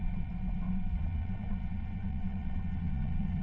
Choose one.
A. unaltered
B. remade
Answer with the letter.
B